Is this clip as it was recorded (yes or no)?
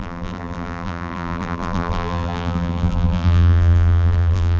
no